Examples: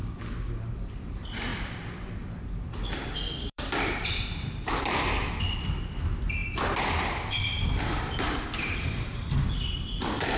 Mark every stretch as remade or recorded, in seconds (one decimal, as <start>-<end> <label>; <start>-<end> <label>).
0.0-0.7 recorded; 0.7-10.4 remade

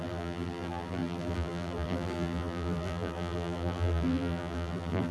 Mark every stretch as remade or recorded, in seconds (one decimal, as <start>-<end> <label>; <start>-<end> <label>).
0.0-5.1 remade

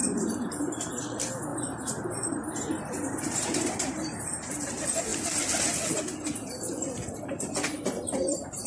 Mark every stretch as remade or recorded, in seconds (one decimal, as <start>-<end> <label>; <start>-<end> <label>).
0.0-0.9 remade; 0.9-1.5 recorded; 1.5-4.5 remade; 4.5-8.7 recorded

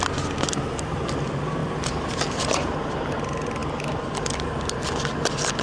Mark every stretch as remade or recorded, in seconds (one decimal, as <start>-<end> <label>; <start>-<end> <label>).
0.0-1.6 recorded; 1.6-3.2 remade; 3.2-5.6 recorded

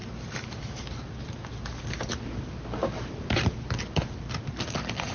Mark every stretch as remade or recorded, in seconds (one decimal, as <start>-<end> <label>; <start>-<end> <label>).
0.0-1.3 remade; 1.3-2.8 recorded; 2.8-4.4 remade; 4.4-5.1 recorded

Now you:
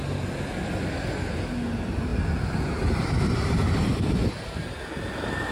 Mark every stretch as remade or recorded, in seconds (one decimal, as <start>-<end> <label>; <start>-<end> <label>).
0.0-2.1 recorded; 2.1-4.0 remade; 4.0-5.5 recorded

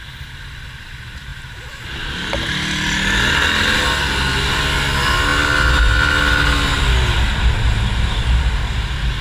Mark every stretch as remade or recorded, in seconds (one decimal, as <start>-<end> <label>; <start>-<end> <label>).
0.0-9.2 recorded